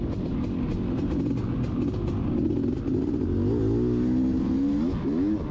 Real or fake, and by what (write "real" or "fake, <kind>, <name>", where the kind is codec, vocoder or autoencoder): real